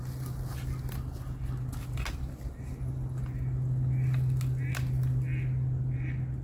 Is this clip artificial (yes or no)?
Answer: no